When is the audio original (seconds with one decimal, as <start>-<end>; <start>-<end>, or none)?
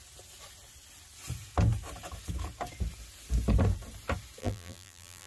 0.0-4.4